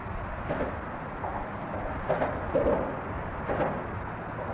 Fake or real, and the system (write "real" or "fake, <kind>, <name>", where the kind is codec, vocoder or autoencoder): real